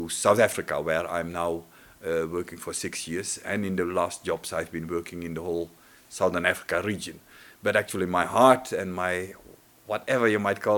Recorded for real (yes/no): yes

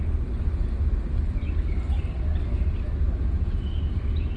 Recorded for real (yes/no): yes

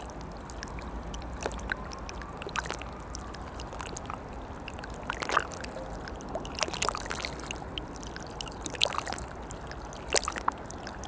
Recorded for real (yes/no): yes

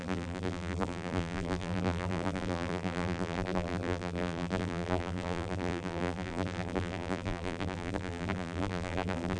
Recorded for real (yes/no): no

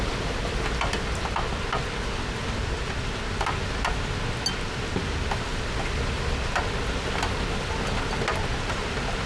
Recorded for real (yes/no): yes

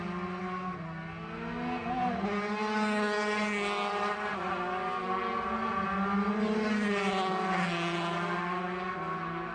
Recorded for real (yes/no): yes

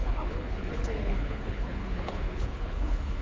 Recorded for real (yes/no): no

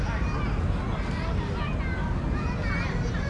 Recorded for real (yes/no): yes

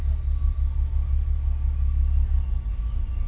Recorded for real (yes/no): yes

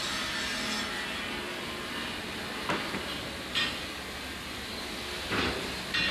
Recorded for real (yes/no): yes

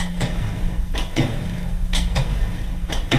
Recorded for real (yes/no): no